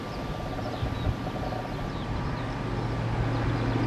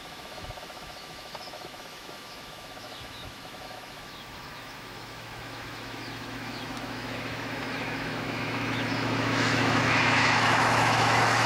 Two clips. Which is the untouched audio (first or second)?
first